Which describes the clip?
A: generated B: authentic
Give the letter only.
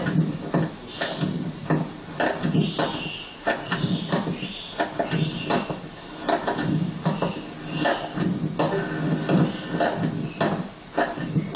B